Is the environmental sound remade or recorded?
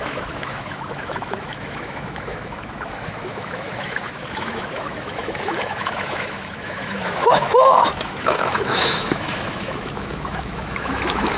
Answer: remade